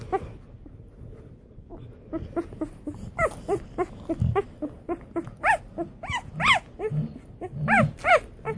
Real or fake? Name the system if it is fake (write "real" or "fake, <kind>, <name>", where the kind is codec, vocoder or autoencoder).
real